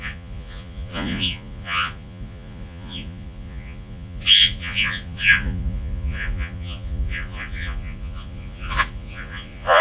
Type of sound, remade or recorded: remade